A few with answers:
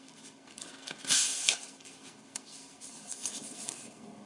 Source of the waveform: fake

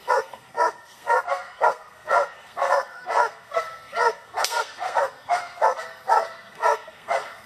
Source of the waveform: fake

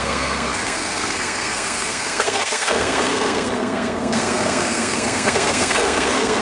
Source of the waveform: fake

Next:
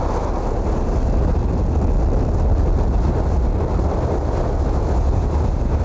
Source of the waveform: real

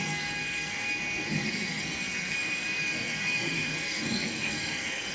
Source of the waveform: fake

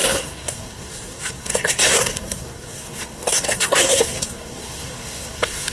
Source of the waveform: fake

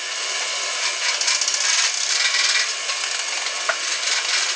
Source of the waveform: real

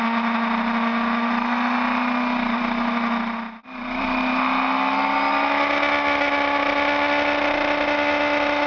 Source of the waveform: real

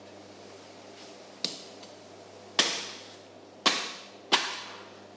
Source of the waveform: real